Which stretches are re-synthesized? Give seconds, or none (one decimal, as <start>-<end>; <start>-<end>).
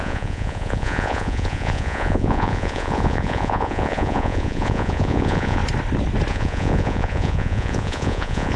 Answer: 0.0-5.6; 6.3-8.6